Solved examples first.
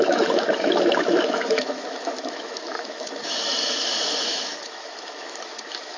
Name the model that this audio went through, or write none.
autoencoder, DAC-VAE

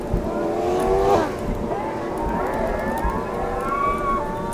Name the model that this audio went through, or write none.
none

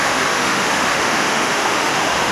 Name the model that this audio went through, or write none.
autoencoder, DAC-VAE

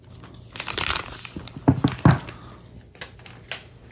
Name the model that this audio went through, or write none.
none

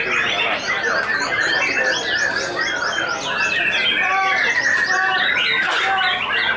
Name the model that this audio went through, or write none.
none